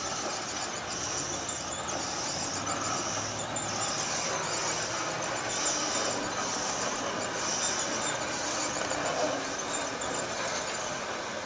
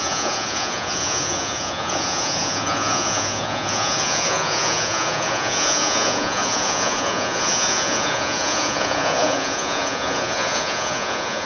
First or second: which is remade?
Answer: second